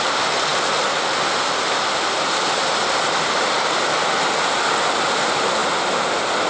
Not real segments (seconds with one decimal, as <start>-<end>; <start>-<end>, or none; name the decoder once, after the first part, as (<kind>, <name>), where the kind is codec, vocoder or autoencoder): none